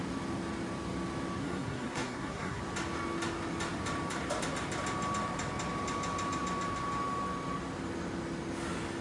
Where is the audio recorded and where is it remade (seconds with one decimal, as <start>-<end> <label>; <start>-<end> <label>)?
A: 0.0-1.4 recorded; 1.4-2.6 remade; 2.6-9.0 recorded